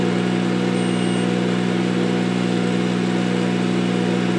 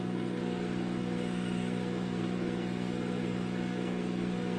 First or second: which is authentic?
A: first